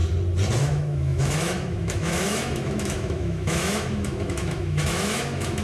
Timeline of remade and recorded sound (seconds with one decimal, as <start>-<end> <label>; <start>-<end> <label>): 0.0-0.6 recorded; 0.6-5.6 remade